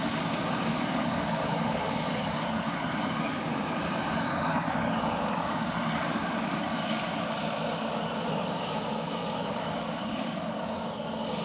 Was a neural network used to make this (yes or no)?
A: yes